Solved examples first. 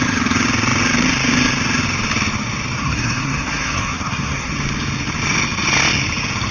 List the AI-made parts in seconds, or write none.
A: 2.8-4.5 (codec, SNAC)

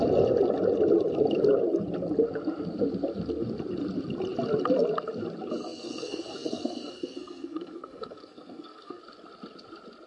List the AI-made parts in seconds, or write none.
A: 5.6-9.0 (codec, SNAC)

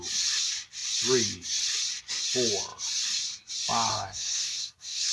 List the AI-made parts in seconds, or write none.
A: 3.9-5.1 (codec, SNAC)